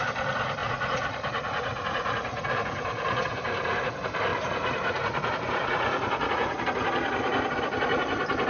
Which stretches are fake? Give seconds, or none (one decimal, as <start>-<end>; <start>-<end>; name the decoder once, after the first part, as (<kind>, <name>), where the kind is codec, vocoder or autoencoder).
0.6-3.9 (vocoder, Vocos); 4.3-6.6